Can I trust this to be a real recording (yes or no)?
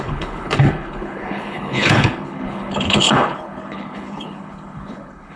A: no